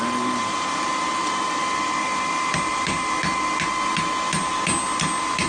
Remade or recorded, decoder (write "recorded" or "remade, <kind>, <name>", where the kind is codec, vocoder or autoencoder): recorded